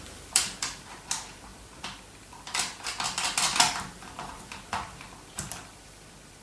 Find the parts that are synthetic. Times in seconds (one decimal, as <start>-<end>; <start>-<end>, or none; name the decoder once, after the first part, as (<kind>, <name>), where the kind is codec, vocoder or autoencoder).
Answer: 0.0-6.4 (vocoder, BigVGAN v2)